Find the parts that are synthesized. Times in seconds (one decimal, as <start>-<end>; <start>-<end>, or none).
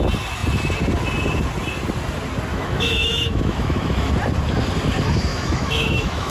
2.5-4.1; 5.3-6.3